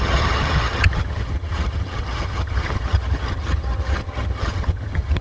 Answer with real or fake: fake